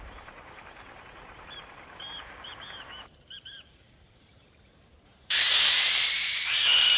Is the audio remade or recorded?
remade